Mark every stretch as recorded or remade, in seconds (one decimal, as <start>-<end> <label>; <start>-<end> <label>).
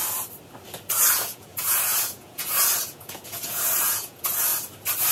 0.0-1.1 recorded; 1.1-4.5 remade; 4.5-5.1 recorded